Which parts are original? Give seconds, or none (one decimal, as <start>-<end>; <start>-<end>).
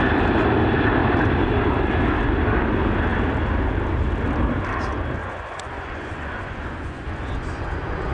0.0-5.2